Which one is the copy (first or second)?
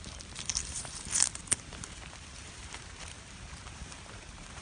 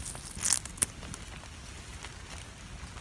first